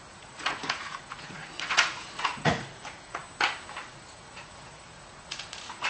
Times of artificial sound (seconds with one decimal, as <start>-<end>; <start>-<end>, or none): 0.0-3.2; 3.8-5.9